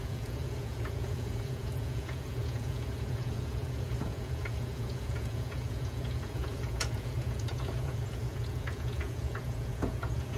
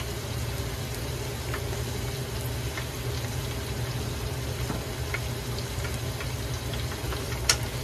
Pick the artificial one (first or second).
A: first